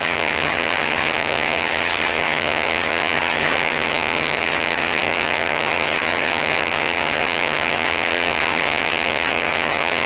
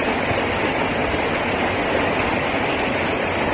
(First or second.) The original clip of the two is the second